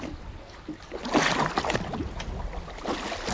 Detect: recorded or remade recorded